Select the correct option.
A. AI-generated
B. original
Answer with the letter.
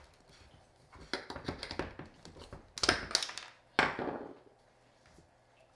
B